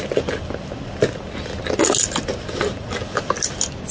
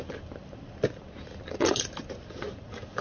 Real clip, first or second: first